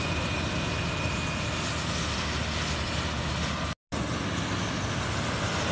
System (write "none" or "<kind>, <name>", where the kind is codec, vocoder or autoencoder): none